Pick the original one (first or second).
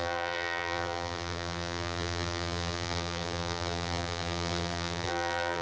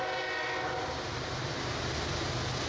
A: second